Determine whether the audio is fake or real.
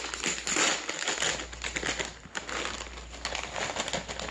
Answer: real